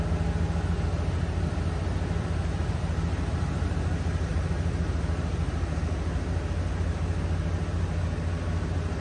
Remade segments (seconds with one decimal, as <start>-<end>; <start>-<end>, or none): none